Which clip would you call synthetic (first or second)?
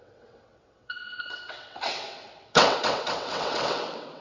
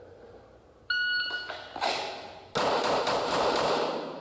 first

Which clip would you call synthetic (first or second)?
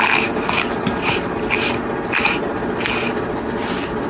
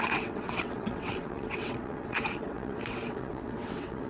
second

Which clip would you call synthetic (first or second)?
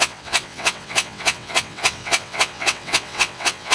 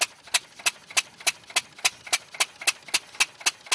first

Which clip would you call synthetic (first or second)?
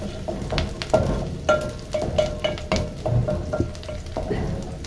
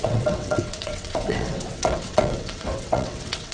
second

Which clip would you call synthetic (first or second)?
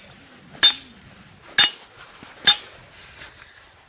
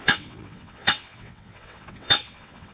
second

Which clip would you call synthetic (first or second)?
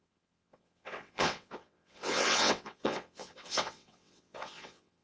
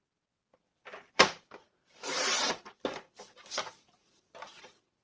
first